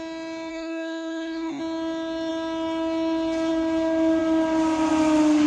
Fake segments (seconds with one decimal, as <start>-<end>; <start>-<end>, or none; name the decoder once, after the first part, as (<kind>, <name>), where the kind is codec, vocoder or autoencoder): 0.5-1.6 (codec, SNAC)